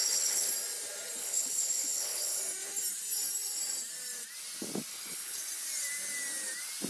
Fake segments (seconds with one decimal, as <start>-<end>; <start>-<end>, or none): 0.0-0.5; 1.2-2.4; 4.9-5.4